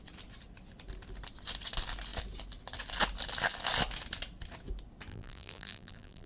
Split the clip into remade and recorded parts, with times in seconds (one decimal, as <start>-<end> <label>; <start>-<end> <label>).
0.0-5.1 recorded; 5.1-6.3 remade